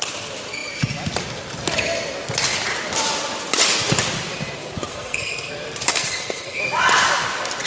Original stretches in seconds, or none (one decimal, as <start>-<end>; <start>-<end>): 0.0-4.9; 5.5-5.9; 6.6-7.7